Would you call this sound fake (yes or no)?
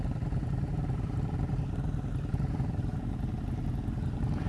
no